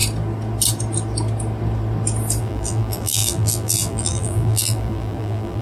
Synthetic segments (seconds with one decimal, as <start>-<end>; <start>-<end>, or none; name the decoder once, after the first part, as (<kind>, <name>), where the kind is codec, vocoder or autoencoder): 2.4-5.6 (vocoder, BigVGAN v2)

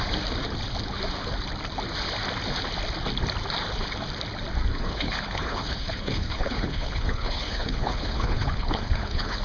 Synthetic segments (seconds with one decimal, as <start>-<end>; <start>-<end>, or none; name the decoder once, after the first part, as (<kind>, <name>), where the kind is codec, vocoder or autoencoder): 4.7-9.4 (codec, HILCodec)

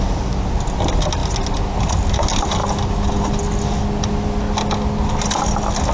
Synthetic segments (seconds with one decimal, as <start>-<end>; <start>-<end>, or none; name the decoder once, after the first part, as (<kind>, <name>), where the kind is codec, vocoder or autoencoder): none

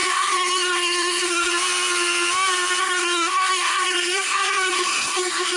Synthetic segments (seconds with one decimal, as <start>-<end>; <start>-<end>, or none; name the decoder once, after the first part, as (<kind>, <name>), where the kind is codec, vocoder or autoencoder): 0.0-1.5 (codec, SNAC); 2.8-5.6

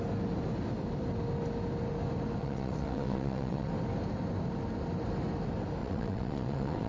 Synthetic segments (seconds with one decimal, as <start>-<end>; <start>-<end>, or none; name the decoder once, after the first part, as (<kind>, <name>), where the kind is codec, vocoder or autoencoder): 2.4-3.7 (vocoder, WaveNeXt); 5.8-6.9

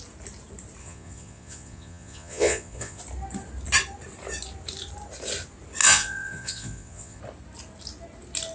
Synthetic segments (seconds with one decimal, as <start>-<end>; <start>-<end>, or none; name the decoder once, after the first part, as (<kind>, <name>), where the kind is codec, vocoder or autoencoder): 0.8-3.0 (vocoder, Vocos); 5.8-7.2